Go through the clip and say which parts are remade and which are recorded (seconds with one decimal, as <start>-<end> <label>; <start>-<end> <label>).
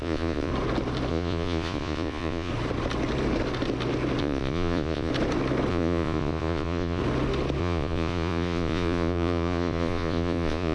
0.0-0.5 remade; 0.5-1.1 recorded; 1.1-2.5 remade; 2.5-4.2 recorded; 4.2-5.1 remade; 5.1-5.7 recorded; 5.7-7.0 remade; 7.0-7.6 recorded; 7.6-10.7 remade